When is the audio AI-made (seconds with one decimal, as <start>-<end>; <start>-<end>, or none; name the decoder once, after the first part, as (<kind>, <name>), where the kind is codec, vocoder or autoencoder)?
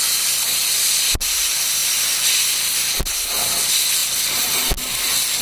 none